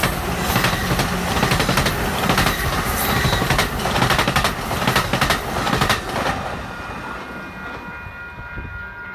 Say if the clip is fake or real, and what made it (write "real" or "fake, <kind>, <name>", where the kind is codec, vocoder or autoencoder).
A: real